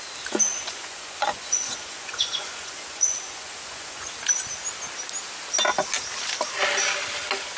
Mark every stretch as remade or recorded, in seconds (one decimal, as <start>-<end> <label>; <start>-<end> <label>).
0.0-0.5 recorded; 0.5-4.1 remade; 4.1-7.6 recorded